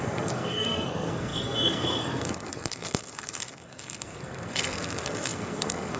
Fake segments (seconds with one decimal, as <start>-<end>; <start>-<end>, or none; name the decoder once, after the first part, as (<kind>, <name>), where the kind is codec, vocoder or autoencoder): 0.0-6.0 (codec, SNAC)